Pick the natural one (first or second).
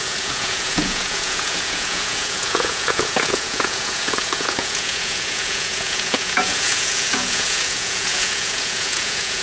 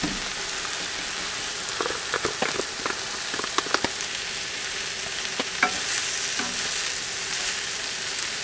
second